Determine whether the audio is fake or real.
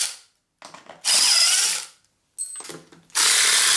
real